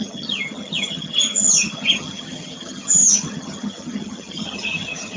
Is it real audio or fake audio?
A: fake